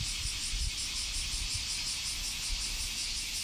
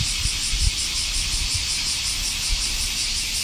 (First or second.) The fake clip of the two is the second